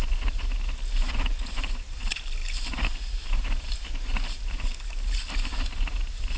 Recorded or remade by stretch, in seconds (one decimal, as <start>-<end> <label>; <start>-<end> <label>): 0.0-6.4 recorded